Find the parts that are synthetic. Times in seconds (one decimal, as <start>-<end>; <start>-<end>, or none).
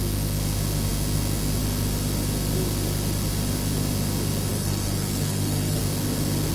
4.5-5.8